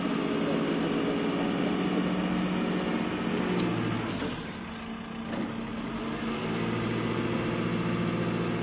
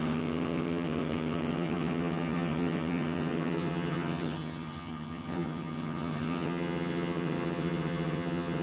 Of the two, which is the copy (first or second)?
second